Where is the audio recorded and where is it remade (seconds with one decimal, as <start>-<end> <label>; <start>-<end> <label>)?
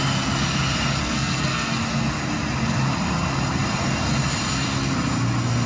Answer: 0.0-1.0 recorded; 1.0-1.8 remade; 1.8-5.7 recorded